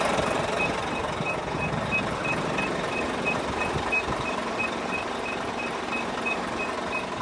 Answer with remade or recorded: recorded